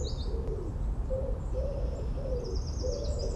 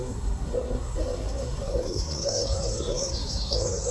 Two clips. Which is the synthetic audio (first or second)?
second